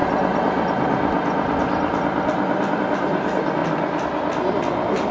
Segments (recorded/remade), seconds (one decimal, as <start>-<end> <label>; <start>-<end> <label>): 0.0-5.1 recorded